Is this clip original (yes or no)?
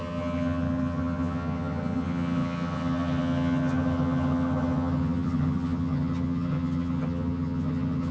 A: no